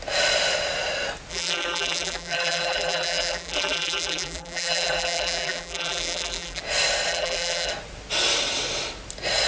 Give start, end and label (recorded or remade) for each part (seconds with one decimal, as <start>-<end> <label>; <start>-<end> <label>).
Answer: 0.0-1.3 recorded; 1.3-6.6 remade; 6.6-7.1 recorded; 7.1-7.7 remade; 7.7-9.5 recorded